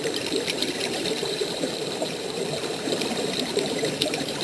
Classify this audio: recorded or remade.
remade